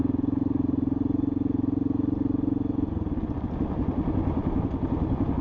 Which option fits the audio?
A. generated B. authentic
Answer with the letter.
B